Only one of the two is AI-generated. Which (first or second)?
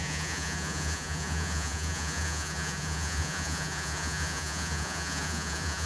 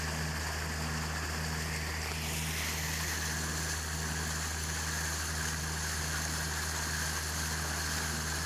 first